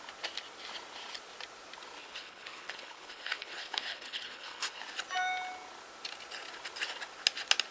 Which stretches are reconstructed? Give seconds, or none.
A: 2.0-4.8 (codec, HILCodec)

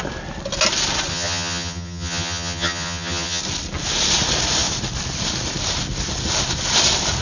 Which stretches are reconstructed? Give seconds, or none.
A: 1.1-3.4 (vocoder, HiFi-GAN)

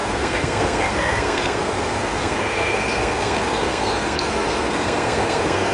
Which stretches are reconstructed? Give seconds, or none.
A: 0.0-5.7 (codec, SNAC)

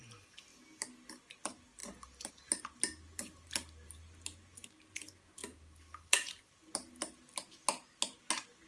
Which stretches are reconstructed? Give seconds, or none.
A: none

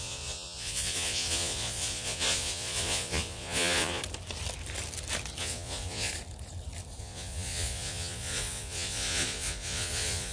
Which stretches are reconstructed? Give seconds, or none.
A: 0.0-4.0 (vocoder, Vocos); 5.4-6.1; 7.0-10.3